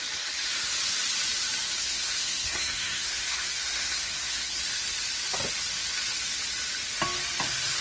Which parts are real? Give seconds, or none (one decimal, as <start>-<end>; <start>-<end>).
0.0-1.8; 4.6-7.8